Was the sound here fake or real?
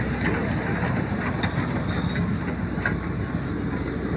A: real